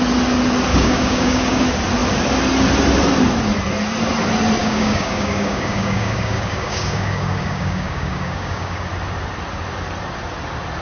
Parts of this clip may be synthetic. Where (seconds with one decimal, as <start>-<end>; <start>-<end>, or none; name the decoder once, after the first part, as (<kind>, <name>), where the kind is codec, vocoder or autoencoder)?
0.7-1.6 (codec, DAC); 4.6-8.9